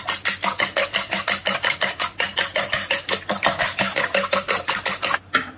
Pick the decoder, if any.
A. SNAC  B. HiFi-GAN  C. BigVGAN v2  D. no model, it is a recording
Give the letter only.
D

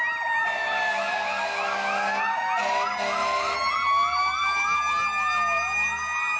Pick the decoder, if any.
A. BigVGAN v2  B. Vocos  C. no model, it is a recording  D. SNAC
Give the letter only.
C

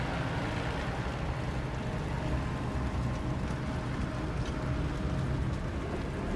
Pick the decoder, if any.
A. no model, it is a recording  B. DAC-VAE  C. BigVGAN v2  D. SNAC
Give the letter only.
A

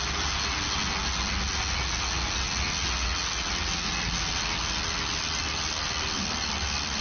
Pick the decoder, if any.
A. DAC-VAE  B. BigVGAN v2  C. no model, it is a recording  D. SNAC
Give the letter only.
C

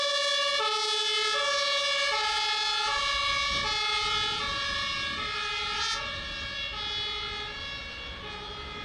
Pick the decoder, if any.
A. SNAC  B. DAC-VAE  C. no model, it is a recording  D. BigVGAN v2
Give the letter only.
C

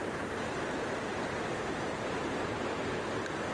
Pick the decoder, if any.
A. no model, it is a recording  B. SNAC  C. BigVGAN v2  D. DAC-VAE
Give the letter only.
A